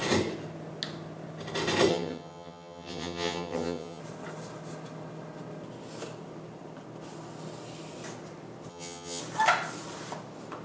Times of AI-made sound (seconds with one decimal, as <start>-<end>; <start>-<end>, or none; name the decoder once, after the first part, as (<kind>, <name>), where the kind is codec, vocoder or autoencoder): 1.9-4.0 (vocoder, HiFi-GAN); 8.7-9.2